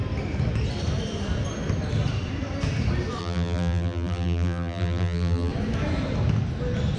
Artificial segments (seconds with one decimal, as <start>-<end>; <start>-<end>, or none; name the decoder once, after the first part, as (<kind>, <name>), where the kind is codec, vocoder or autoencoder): 3.2-5.5 (vocoder, BigVGAN v2)